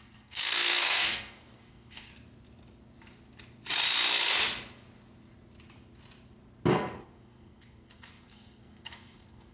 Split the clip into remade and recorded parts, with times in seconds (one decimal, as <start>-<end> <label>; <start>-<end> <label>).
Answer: 0.0-2.1 remade; 2.1-6.7 recorded; 6.7-9.5 remade